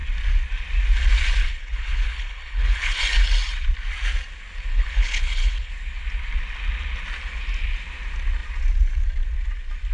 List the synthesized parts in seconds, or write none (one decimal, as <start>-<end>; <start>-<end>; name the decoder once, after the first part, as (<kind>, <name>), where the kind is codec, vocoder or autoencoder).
1.4-3.0 (codec, HILCodec); 4.7-5.7

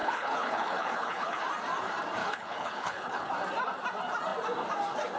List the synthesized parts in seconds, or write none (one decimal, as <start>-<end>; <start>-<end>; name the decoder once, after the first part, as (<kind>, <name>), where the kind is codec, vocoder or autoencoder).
0.0-1.4 (codec, HILCodec); 2.2-3.3

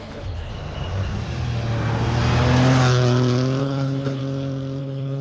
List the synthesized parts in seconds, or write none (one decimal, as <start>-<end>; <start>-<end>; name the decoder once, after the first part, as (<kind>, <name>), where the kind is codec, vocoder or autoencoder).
0.0-0.5 (codec, HILCodec); 3.6-4.2; 4.8-5.2

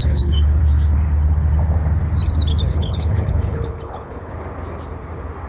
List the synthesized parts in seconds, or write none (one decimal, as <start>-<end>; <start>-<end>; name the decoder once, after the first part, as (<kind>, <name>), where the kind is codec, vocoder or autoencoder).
0.0-0.6 (codec, HILCodec); 2.7-4.3